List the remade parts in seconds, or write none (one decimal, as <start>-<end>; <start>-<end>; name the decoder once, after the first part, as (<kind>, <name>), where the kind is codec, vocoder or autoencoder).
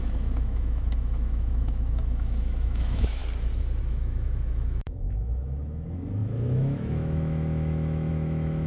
0.0-3.2 (autoencoder, DAC-VAE); 3.8-8.7